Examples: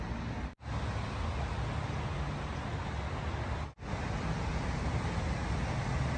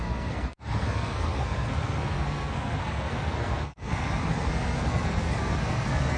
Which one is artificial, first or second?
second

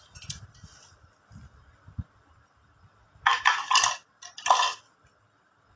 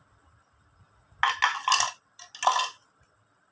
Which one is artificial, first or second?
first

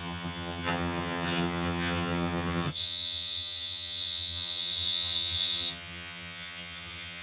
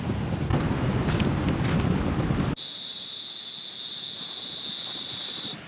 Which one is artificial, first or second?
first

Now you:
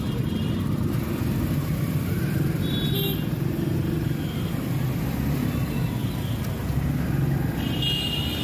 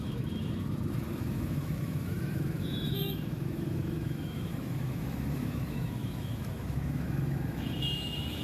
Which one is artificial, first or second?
second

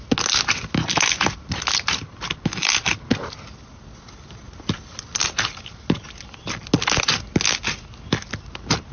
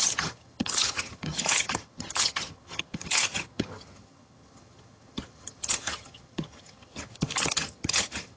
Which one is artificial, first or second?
second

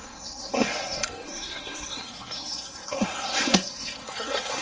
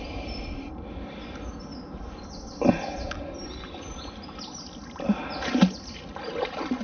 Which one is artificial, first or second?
first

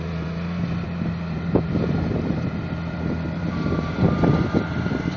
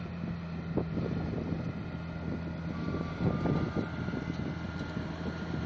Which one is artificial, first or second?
first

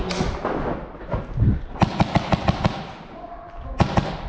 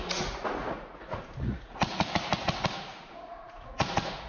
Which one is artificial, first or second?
second